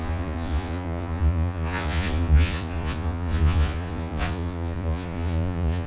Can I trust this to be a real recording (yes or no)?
no